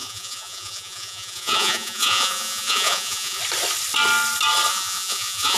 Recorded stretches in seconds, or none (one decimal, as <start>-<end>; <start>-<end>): 3.4-4.7